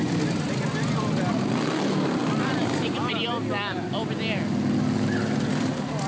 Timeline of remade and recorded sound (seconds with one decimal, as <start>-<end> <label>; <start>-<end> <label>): 0.0-6.1 recorded